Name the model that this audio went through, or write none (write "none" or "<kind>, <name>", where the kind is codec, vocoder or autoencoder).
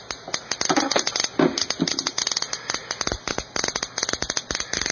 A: none